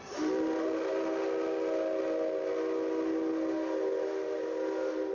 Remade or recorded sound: recorded